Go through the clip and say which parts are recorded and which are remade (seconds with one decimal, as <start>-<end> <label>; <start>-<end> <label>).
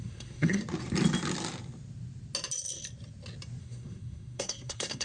0.0-0.6 remade; 0.6-3.6 recorded; 3.6-5.0 remade